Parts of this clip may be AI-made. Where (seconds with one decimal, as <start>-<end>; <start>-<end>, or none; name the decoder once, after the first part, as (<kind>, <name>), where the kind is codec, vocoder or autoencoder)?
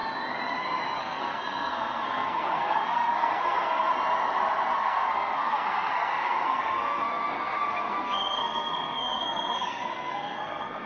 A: 1.0-3.9 (codec, SNAC); 4.8-10.9